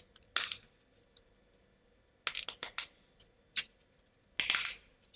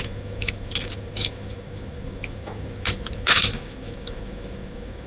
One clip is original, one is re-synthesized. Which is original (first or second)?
first